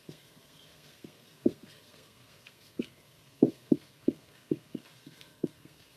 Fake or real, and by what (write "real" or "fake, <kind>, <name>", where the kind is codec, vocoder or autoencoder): fake, codec, SNAC